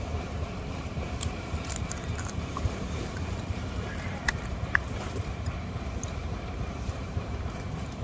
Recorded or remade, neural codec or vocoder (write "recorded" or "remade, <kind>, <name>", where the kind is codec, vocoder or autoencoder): remade, vocoder, BigVGAN v2